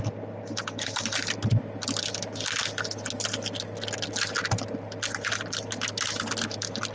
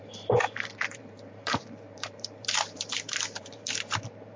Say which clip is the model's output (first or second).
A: second